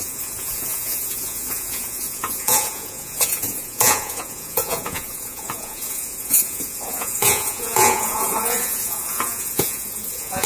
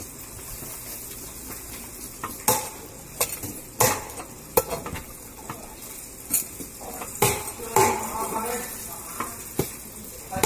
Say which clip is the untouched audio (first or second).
second